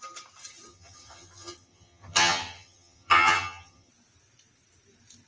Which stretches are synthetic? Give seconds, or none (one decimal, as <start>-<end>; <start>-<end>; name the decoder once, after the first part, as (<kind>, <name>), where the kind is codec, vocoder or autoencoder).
0.7-3.9 (vocoder, HiFi-GAN)